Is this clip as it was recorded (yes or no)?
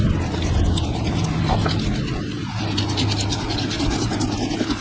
yes